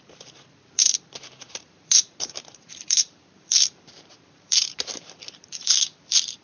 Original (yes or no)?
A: no